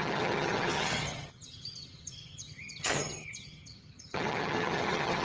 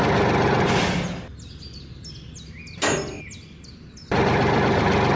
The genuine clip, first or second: second